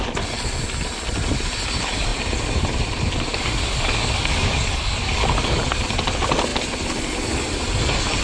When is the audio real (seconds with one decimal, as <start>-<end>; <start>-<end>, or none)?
0.0-3.3; 5.6-8.2